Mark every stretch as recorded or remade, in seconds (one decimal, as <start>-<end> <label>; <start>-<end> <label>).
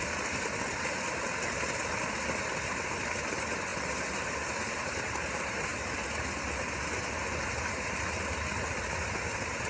0.0-9.7 recorded